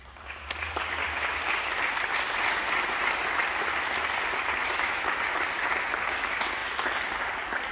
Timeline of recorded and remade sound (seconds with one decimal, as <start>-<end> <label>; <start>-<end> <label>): 0.0-4.6 recorded; 4.6-5.2 remade; 5.2-7.7 recorded